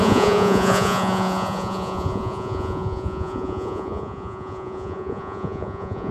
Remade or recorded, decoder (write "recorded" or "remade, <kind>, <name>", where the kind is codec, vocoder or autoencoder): remade, vocoder, Vocos